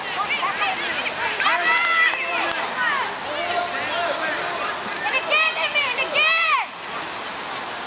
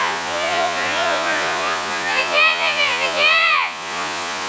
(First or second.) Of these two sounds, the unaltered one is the first